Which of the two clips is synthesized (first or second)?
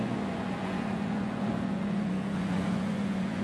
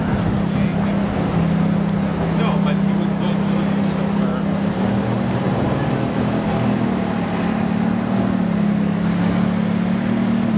first